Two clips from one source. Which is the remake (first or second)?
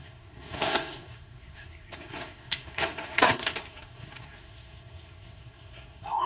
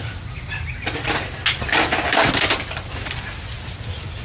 first